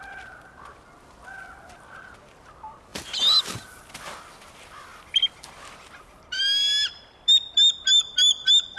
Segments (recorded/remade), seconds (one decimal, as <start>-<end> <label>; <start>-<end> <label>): 0.0-8.8 recorded